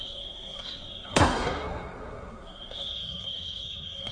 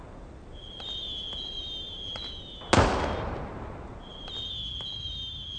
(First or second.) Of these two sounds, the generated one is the first